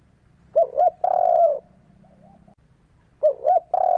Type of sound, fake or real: fake